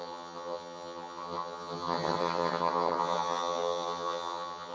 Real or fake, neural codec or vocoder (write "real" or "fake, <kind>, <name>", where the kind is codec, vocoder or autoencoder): fake, vocoder, HiFi-GAN